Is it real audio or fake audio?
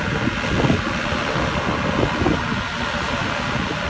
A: real